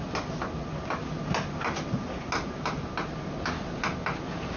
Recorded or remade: recorded